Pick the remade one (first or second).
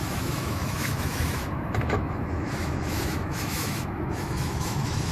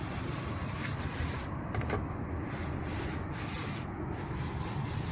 first